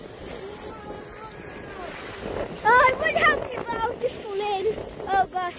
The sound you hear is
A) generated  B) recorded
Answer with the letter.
B